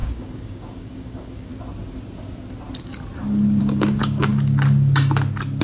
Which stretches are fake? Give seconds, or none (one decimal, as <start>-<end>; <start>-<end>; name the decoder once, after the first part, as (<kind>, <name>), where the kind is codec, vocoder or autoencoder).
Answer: 0.0-1.5 (codec, DAC); 3.6-4.3